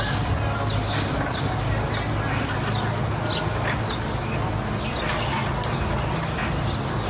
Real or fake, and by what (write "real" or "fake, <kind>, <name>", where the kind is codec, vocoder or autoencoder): real